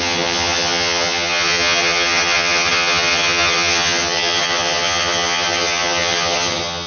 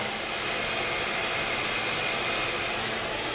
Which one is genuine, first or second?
second